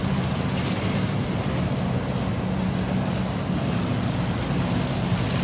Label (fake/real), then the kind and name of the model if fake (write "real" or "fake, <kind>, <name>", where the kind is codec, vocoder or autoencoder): real